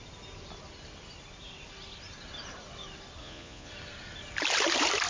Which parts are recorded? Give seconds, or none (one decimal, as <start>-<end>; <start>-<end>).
0.0-3.2; 3.7-5.1